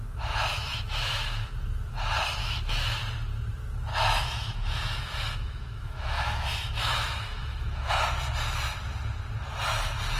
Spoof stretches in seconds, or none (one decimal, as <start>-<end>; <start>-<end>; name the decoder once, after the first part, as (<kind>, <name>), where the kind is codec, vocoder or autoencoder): 0.5-1.5 (autoencoder, DAC-VAE); 2.4-3.0; 3.9-7.9